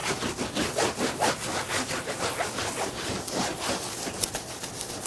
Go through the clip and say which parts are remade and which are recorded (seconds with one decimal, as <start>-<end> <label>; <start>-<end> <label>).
0.0-5.1 recorded